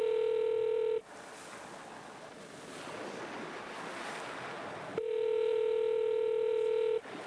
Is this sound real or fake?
real